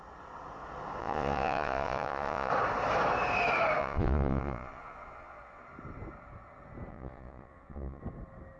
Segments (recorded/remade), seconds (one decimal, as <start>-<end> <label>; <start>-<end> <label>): 0.0-1.0 recorded; 1.0-2.5 remade; 2.5-3.8 recorded; 3.8-5.6 remade; 5.6-6.9 recorded; 6.9-8.0 remade; 8.0-8.6 recorded